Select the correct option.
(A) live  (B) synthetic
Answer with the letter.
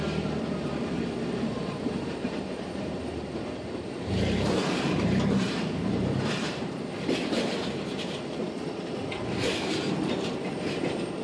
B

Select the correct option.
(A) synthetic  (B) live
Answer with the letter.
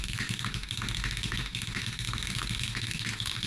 A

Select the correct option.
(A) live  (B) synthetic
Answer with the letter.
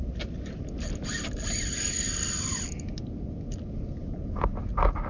A